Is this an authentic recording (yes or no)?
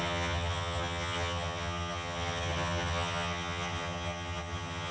no